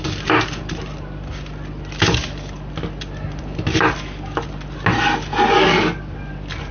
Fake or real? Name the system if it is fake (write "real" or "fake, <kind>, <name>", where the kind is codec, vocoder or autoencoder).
real